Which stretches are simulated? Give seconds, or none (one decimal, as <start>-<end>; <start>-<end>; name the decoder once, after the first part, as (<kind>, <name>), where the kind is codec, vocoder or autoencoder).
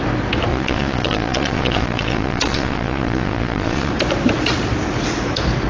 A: 0.5-3.9 (vocoder, Vocos)